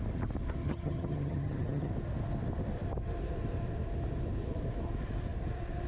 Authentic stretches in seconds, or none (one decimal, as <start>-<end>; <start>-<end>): 0.0-0.6; 1.9-5.9